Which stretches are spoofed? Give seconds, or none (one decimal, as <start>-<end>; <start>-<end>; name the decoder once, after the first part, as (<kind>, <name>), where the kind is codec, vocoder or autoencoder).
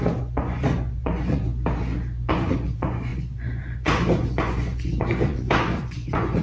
0.0-1.5 (vocoder, Vocos); 2.3-6.4